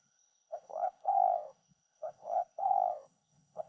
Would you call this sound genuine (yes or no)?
no